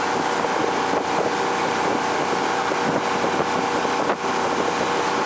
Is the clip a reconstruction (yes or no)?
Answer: no